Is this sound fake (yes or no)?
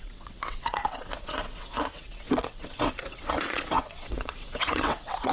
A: yes